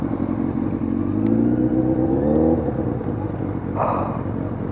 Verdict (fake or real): real